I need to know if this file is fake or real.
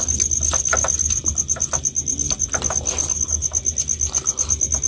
real